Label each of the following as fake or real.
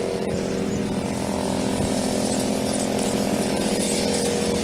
real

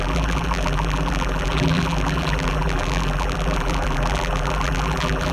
fake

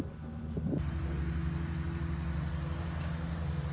real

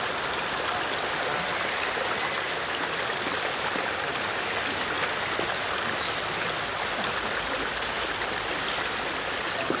real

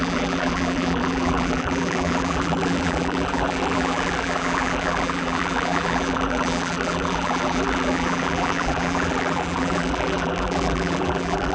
fake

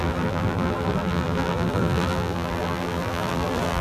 fake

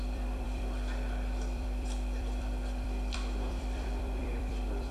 fake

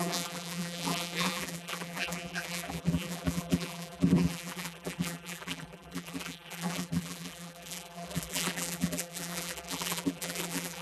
fake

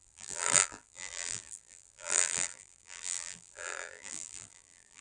fake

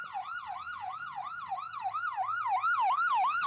real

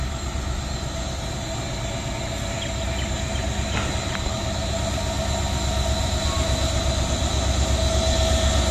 real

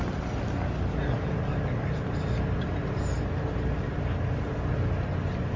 real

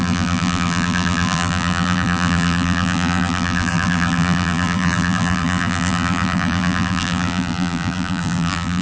fake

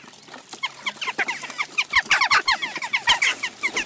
real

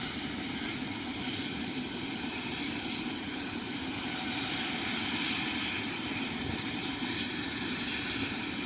fake